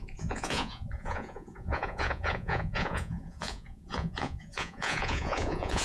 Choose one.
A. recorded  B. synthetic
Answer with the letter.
B